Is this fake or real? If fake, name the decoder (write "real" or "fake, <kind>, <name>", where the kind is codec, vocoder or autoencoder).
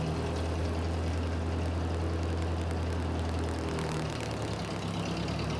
real